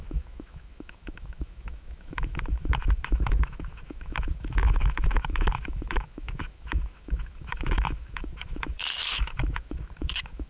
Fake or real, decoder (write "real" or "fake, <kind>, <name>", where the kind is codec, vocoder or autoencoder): fake, autoencoder, DAC-VAE